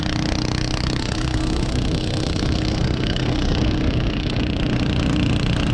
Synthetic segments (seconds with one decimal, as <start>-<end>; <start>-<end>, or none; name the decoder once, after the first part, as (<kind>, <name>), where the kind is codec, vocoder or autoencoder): 1.0-4.4 (codec, SNAC)